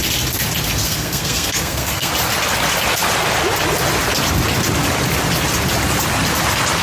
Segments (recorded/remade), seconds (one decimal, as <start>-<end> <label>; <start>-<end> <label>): 0.0-0.8 recorded; 0.8-2.1 remade; 2.1-6.8 recorded